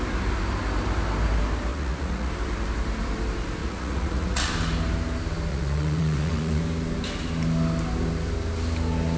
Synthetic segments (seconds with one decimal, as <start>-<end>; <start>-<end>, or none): 1.7-2.3; 3.6-4.5; 5.5-6.6